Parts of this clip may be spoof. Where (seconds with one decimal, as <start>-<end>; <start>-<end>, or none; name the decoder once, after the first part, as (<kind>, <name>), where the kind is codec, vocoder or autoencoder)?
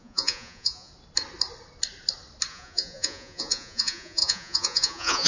0.0-0.9 (vocoder, Vocos); 2.5-5.3